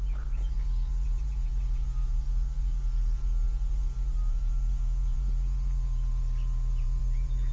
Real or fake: fake